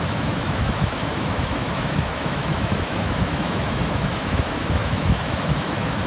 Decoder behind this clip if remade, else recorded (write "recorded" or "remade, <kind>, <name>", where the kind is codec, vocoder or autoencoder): remade, autoencoder, DAC-VAE